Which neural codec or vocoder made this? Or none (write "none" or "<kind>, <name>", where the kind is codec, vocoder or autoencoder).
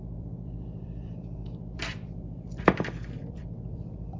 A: vocoder, BigVGAN v2